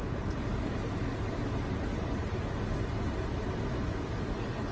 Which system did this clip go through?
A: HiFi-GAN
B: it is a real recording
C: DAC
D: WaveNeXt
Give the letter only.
B